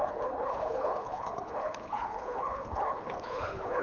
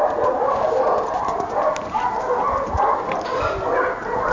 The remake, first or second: first